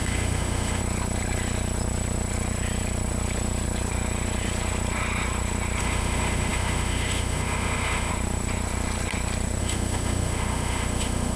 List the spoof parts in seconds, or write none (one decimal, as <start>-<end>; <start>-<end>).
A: 0.0-0.8; 5.8-8.1; 9.6-11.4